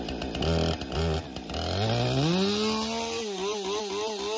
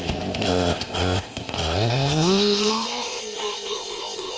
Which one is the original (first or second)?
first